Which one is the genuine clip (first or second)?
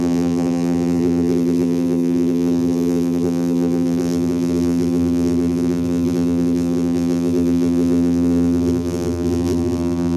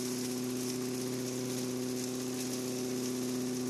second